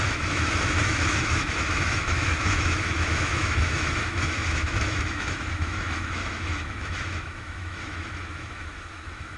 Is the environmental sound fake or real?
fake